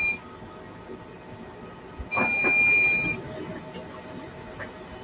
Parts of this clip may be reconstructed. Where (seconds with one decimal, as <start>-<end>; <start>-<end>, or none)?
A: none